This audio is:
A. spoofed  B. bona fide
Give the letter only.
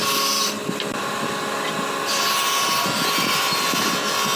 B